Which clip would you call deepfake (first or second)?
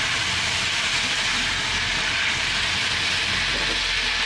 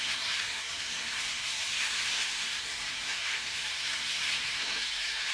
second